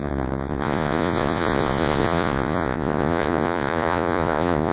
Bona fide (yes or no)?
no